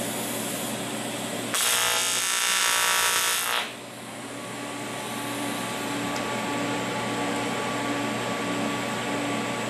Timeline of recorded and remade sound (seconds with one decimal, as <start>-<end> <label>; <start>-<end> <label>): 0.0-9.7 recorded